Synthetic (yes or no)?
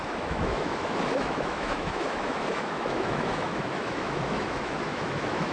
yes